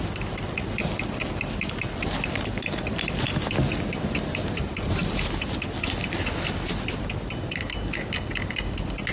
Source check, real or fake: real